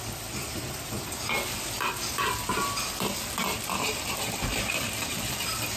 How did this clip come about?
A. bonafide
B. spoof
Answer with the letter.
A